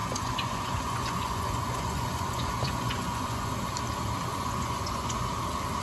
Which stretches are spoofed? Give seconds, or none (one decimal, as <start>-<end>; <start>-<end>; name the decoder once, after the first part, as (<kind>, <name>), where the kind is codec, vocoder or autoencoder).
0.0-3.5 (vocoder, Vocos); 4.3-5.3